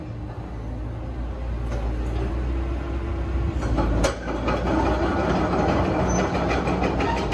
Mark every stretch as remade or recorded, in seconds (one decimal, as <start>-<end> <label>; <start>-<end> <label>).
0.0-7.3 recorded